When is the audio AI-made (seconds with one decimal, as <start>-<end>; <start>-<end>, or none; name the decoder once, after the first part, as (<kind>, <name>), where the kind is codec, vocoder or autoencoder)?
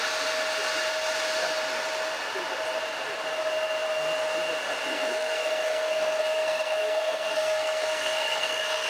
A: 4.9-8.9 (codec, SNAC)